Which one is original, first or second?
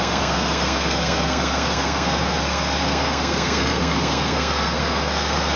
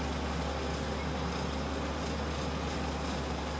second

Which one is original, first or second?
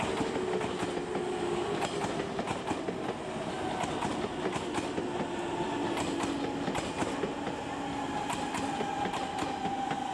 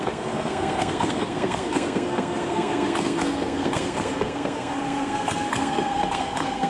first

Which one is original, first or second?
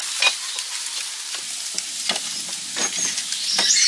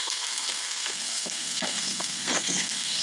first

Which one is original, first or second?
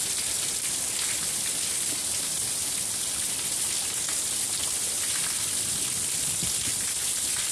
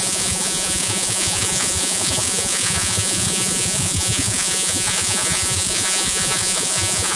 first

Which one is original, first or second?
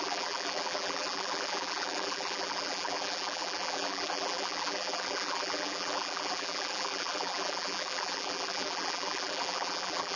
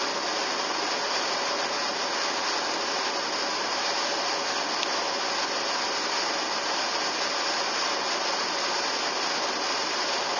second